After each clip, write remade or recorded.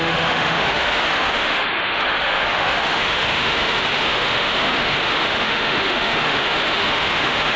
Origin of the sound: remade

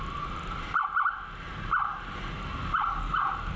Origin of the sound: recorded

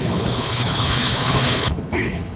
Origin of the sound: remade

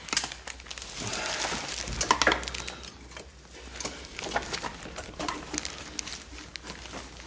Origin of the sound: recorded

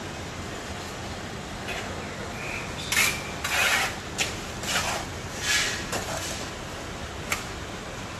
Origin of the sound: recorded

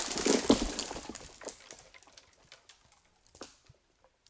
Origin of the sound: recorded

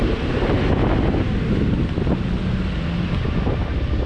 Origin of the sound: recorded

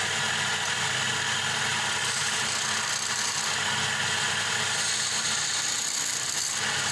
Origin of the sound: recorded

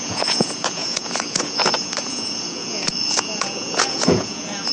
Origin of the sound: remade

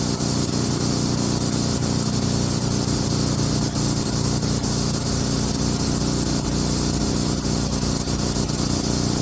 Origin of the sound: recorded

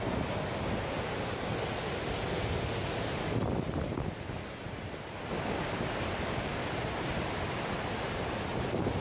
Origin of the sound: recorded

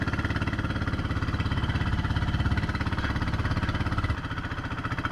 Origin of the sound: recorded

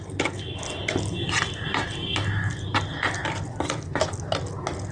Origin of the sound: recorded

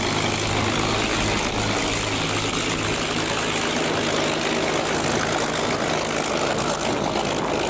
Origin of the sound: recorded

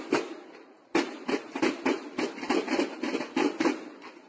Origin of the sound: recorded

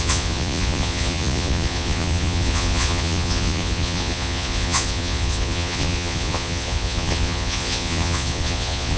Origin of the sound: remade